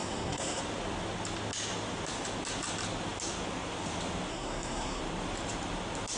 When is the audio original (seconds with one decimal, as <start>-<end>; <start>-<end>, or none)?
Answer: 0.6-4.3; 5.0-6.2